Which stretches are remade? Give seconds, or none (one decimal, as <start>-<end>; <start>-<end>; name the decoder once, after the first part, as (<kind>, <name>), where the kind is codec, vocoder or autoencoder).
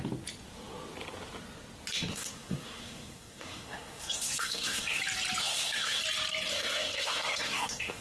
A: 2.1-5.0 (codec, SNAC); 5.4-6.0; 6.5-8.0